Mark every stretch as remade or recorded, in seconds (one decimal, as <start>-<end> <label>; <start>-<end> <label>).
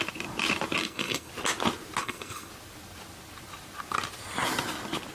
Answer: 0.0-0.8 recorded; 0.8-1.3 remade; 1.3-2.0 recorded; 2.0-2.5 remade; 2.5-5.1 recorded